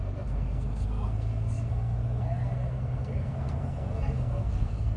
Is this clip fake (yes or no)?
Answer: yes